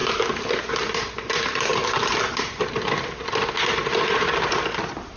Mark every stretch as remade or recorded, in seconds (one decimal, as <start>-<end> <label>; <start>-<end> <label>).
0.0-5.2 recorded

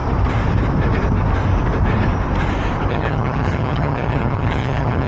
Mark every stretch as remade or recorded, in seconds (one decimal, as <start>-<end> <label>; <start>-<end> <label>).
0.0-2.9 recorded; 2.9-5.1 remade

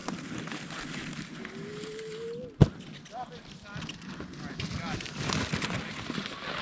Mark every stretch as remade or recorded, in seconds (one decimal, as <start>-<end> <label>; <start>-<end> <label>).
0.0-6.6 recorded